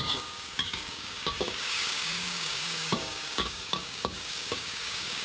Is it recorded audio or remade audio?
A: remade